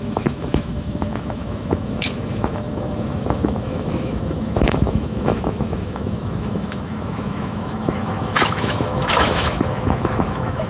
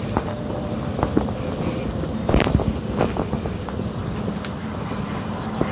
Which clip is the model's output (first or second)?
first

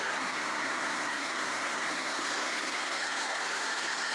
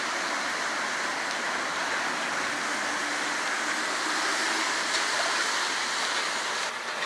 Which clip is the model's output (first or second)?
first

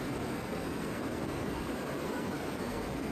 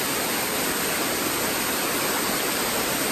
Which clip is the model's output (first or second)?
first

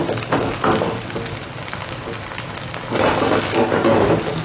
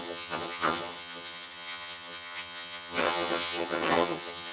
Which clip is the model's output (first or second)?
second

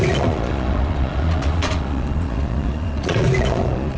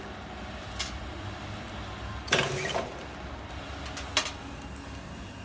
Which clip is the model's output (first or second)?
first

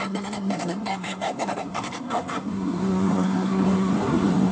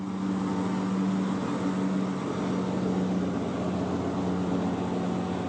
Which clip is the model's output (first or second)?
first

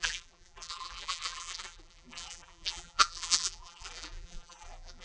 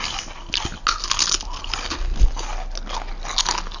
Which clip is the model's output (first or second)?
first